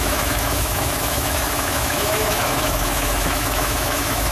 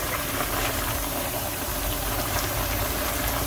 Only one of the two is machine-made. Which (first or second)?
first